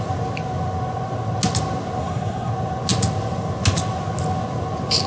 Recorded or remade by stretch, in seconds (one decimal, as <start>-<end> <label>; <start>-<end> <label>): 0.0-2.0 recorded; 2.0-2.5 remade; 2.5-5.1 recorded